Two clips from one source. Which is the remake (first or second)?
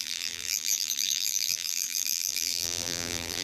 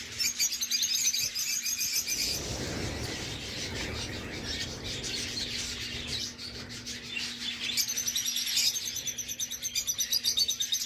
first